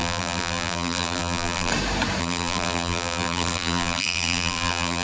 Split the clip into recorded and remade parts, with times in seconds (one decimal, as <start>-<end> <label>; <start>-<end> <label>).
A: 0.0-1.7 remade; 1.7-2.2 recorded; 2.2-5.0 remade